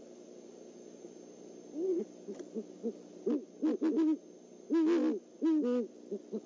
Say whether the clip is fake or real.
real